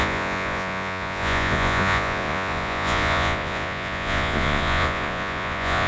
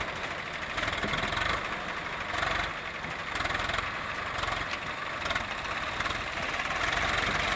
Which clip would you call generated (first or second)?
first